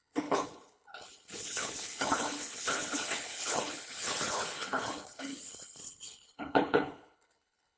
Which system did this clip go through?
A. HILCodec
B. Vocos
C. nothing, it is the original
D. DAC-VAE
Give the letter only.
A